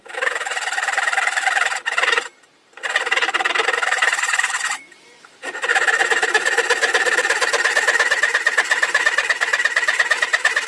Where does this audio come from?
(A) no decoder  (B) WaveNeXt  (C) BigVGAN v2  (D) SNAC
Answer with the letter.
C